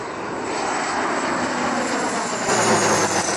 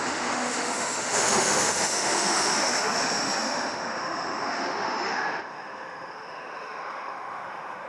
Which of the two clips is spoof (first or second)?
second